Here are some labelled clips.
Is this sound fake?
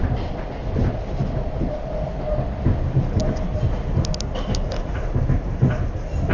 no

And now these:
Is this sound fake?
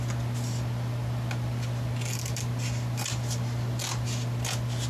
no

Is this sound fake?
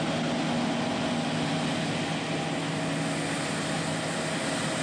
no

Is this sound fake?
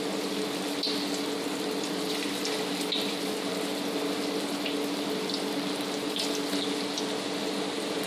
no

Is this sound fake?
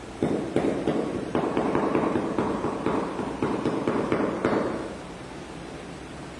yes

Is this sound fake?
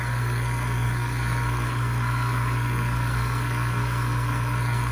yes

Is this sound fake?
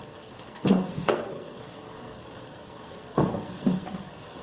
yes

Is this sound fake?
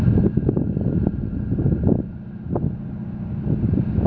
no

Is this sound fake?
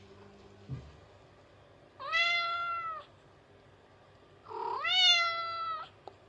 no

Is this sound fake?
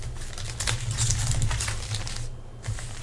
no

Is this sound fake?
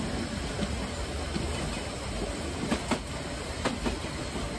no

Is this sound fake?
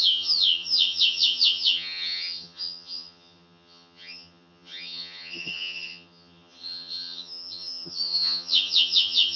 yes